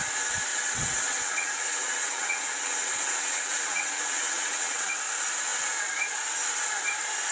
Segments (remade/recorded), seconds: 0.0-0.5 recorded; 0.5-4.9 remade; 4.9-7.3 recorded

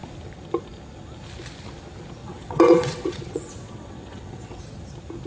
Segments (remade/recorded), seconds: 0.0-2.2 recorded; 2.2-4.6 remade; 4.6-5.3 recorded

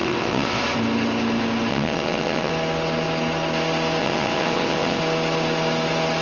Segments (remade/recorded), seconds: 0.0-0.6 remade; 0.6-1.7 recorded; 1.7-2.5 remade; 2.5-4.0 recorded; 4.0-5.0 remade; 5.0-6.2 recorded

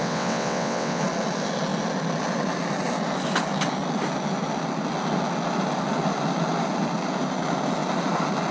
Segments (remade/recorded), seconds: 0.0-1.0 remade; 1.0-8.5 recorded